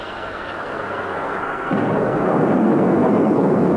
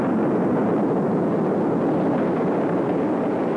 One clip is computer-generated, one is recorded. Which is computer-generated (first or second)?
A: first